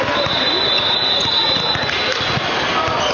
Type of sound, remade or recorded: recorded